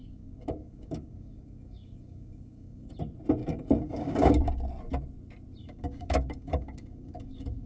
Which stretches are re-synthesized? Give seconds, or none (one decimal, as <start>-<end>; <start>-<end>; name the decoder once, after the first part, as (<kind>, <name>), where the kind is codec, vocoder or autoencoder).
0.0-2.9 (codec, DAC); 3.4-4.4; 5.6-7.7